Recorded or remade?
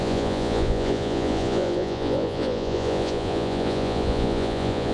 remade